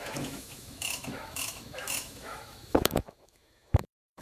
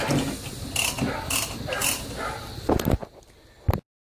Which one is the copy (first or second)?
first